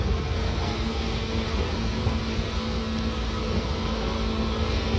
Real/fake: fake